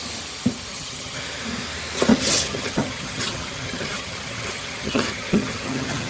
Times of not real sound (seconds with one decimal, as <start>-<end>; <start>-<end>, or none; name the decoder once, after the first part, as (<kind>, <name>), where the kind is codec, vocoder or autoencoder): 0.7-1.2 (vocoder, HiFi-GAN); 2.1-6.1